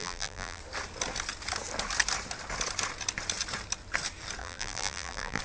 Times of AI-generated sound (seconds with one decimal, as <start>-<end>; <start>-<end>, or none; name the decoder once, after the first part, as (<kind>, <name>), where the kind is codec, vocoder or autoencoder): 0.0-0.6 (vocoder, BigVGAN v2); 4.4-5.4